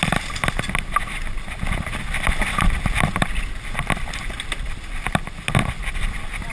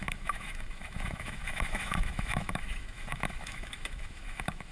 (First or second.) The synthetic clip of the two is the second